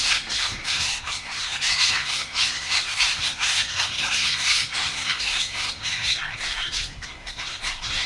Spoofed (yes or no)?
yes